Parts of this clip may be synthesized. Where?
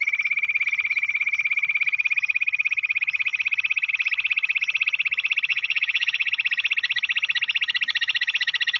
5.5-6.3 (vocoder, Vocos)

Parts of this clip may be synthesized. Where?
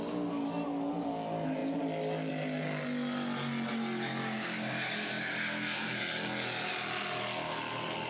4.2-6.0 (codec, DAC)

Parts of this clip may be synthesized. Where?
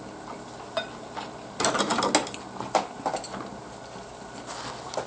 none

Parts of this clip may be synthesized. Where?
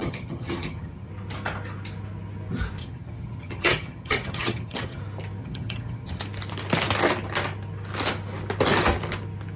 0.0-1.1 (vocoder, HiFi-GAN); 2.8-5.0; 5.4-6.2